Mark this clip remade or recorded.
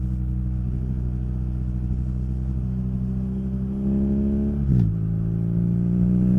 recorded